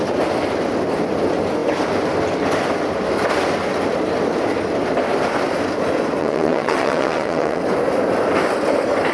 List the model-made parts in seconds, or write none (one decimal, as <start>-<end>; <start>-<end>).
6.2-7.6